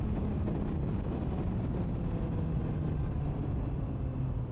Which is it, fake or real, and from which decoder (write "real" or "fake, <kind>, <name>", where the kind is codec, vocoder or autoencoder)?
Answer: real